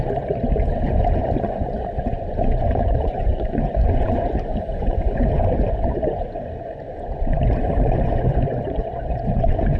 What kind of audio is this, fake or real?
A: fake